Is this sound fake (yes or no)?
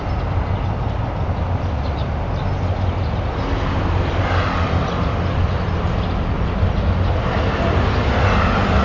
no